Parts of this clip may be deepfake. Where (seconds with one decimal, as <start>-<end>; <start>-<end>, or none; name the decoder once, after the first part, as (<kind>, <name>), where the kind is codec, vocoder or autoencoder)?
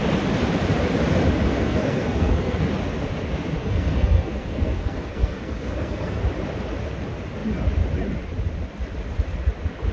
1.5-2.7 (codec, SNAC); 3.6-6.2